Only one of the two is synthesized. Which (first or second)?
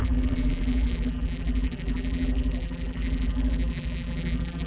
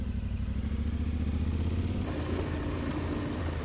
first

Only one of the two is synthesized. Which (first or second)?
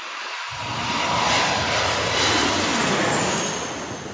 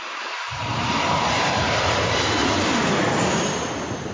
second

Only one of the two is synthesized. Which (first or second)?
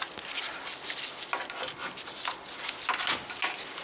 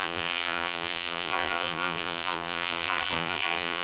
second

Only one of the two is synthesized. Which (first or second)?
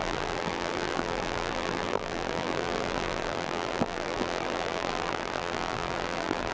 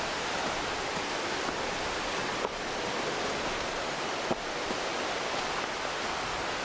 first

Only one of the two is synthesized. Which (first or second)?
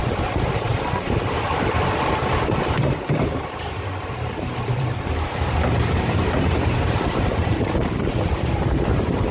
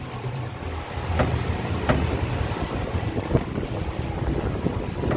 first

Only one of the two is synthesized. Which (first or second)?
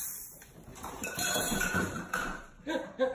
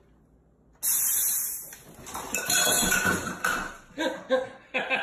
first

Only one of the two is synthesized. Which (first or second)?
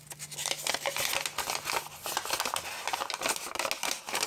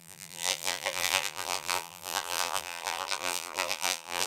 second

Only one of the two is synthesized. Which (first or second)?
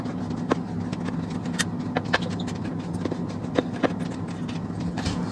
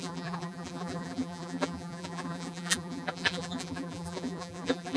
second